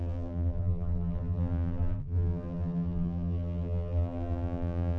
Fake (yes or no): yes